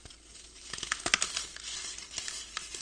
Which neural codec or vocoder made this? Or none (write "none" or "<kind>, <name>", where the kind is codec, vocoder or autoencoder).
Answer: none